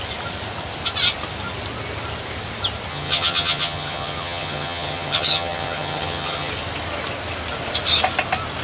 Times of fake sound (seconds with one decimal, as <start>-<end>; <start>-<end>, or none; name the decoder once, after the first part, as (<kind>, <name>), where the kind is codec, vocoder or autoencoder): 2.9-6.5 (vocoder, HiFi-GAN)